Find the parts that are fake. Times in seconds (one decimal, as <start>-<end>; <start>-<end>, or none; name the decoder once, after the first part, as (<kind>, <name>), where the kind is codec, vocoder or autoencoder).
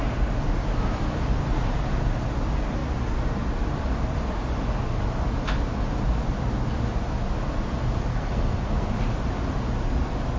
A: 8.1-8.9 (codec, SNAC)